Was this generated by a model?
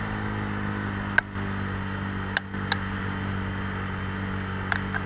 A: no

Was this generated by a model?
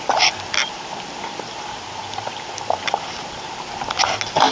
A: no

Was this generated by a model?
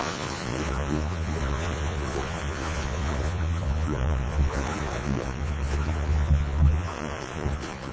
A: yes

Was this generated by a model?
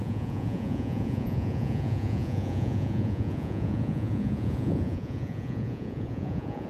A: yes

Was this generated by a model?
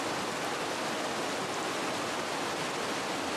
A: no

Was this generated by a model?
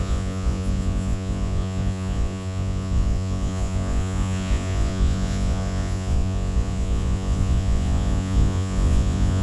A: yes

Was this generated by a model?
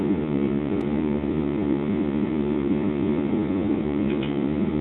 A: yes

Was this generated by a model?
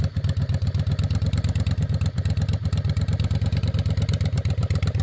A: no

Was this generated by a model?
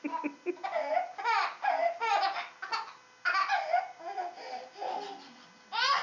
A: no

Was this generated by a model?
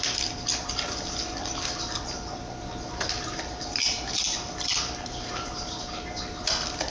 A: no